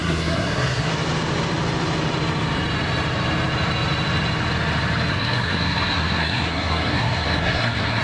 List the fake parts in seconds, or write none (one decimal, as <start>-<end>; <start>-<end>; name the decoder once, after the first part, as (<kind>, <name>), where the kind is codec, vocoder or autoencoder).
0.0-0.9 (codec, SNAC); 5.1-8.0